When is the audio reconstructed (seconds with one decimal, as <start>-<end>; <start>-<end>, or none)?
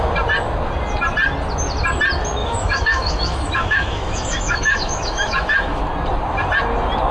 2.4-5.8